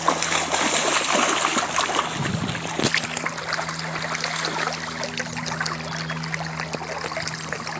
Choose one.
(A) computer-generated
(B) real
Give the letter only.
B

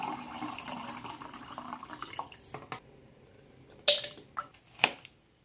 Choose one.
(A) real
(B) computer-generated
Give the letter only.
A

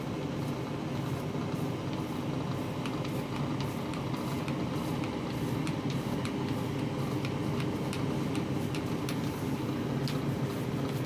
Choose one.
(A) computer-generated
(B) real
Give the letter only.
B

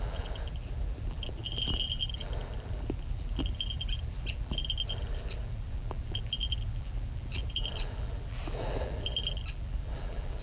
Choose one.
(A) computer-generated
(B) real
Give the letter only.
A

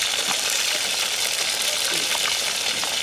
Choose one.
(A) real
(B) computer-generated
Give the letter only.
A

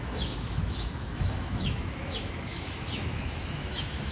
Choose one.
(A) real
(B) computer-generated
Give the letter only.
B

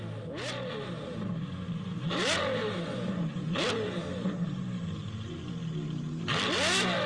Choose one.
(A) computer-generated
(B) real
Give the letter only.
B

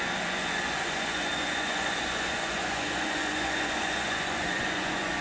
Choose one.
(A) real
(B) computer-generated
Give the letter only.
B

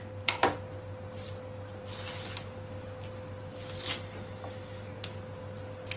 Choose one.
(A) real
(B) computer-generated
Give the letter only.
A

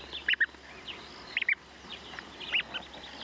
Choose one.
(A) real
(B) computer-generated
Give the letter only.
A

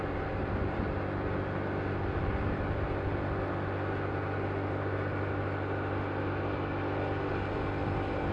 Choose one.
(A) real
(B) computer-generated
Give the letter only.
A